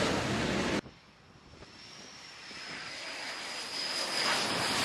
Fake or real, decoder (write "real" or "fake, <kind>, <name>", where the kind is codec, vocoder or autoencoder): real